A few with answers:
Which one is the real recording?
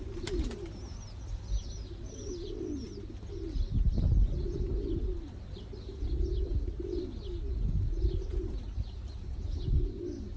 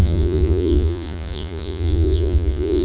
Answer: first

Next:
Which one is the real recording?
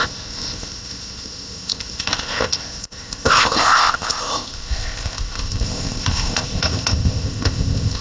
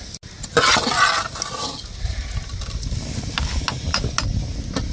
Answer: second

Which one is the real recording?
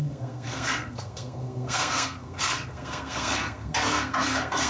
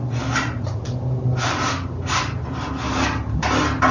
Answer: second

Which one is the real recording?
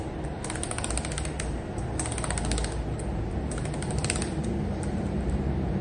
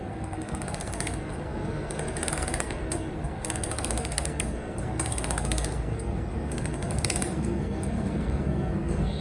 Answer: first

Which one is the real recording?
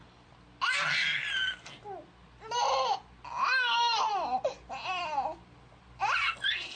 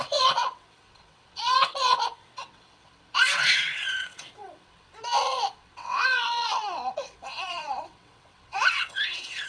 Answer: first